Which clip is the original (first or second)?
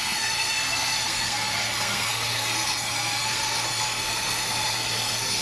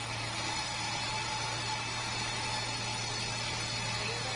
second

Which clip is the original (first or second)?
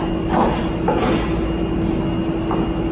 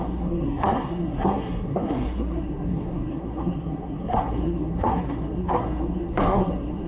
first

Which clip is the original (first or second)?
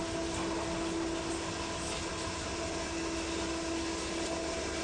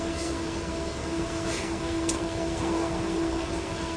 first